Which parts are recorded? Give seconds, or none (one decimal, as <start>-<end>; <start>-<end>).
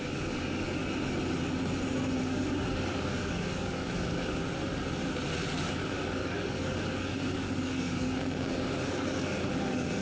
0.8-2.2; 4.4-5.5